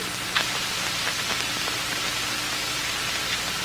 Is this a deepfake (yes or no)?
no